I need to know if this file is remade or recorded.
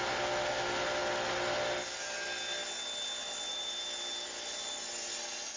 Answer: recorded